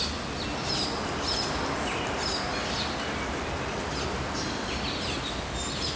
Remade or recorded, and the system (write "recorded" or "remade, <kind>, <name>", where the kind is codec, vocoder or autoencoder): recorded